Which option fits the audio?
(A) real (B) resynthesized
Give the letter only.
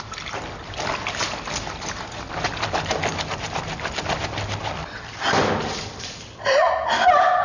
A